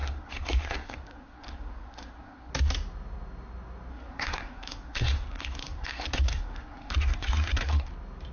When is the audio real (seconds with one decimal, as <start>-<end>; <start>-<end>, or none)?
2.5-3.9; 7.9-8.3